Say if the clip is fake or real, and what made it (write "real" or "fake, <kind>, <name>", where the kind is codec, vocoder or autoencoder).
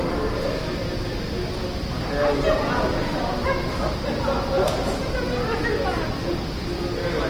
real